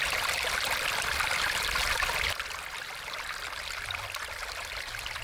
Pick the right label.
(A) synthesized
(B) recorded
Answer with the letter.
B